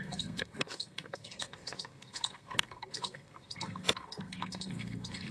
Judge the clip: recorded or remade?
remade